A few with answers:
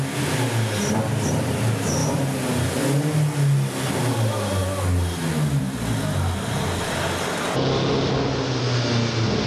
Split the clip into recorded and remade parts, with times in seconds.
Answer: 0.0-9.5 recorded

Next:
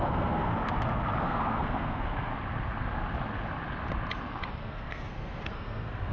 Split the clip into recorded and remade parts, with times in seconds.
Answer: 0.0-0.6 remade; 0.6-1.2 recorded; 1.2-2.3 remade; 2.3-4.5 recorded; 4.5-6.1 remade

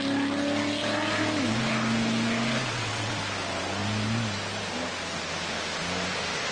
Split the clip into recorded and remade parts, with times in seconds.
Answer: 0.0-2.6 recorded; 2.6-3.1 remade; 3.1-6.5 recorded

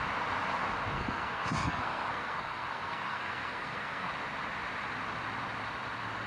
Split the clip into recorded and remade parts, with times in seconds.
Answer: 0.0-0.9 recorded; 0.9-4.1 remade; 4.1-6.3 recorded

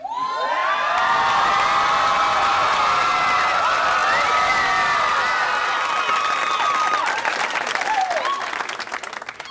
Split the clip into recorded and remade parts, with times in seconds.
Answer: 0.0-9.5 recorded

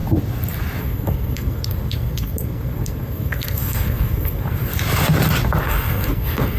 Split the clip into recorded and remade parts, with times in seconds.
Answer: 0.0-0.8 recorded; 0.8-4.7 remade; 4.7-5.6 recorded; 5.6-6.6 remade